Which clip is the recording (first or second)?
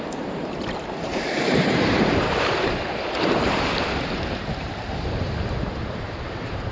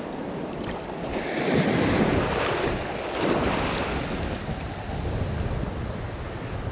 second